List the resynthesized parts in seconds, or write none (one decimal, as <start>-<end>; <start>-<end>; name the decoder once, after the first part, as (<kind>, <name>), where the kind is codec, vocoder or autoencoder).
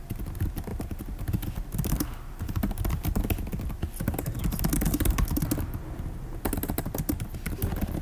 none